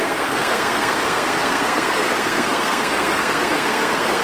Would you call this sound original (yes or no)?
no